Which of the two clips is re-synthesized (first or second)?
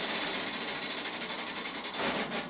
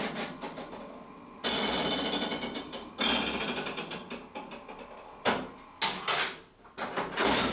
first